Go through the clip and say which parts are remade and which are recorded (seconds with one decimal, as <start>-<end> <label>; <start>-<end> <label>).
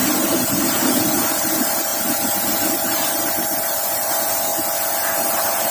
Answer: 0.0-4.5 remade; 4.5-5.2 recorded; 5.2-5.7 remade